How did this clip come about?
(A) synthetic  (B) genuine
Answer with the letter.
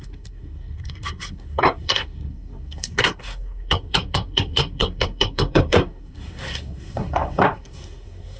A